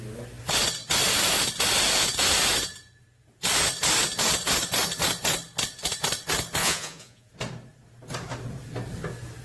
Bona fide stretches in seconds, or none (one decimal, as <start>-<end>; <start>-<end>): 0.0-6.6; 7.3-9.4